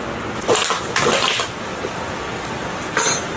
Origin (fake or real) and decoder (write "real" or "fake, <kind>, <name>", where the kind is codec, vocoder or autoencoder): real